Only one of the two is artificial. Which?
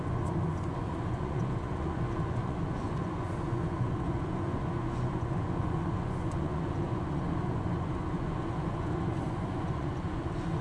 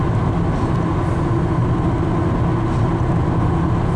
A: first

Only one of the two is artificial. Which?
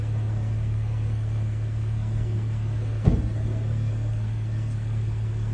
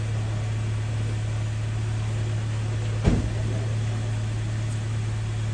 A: first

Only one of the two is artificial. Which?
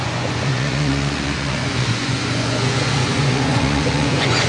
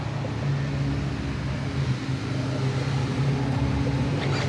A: first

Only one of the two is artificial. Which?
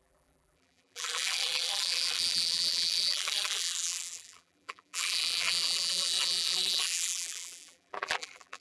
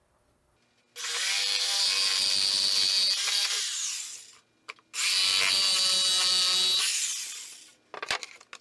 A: first